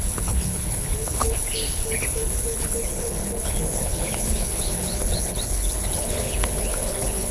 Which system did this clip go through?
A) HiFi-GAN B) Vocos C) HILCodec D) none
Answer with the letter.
C